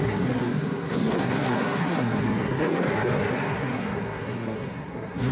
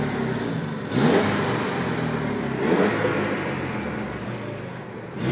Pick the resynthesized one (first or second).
first